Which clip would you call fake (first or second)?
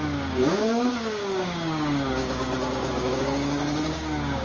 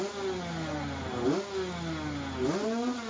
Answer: first